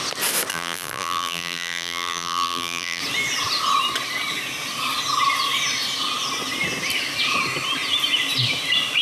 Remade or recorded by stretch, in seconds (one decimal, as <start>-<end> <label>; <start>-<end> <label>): 0.0-0.5 recorded; 0.5-3.0 remade; 3.0-9.0 recorded